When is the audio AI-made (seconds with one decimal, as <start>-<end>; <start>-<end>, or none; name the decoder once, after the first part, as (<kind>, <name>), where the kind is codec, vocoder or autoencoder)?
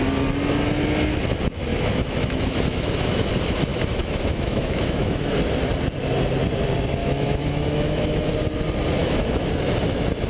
1.7-3.3 (autoencoder, DAC-VAE); 3.7-5.4; 7.0-8.3; 9.0-9.5